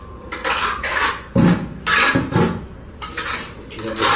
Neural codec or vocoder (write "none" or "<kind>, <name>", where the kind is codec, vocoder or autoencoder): none